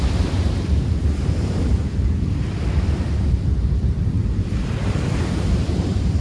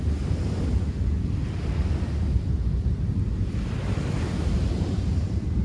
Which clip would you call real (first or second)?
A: second